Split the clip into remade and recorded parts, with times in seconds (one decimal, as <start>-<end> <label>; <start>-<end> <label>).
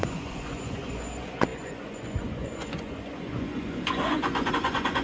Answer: 0.0-5.0 remade